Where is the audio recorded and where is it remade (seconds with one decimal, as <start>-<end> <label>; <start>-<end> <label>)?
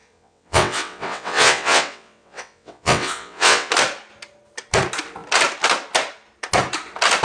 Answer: 0.0-3.7 remade; 3.7-7.2 recorded